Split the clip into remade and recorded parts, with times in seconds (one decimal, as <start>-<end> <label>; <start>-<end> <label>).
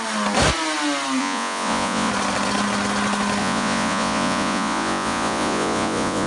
0.0-1.2 recorded; 1.2-2.1 remade; 2.1-3.4 recorded; 3.4-6.3 remade